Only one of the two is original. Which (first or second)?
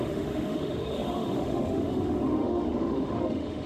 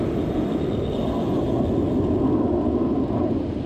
second